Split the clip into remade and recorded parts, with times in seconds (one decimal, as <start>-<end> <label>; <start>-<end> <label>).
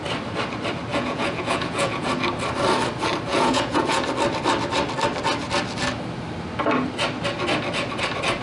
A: 0.0-0.9 recorded; 0.9-2.1 remade; 2.1-3.3 recorded; 3.3-4.0 remade; 4.0-8.4 recorded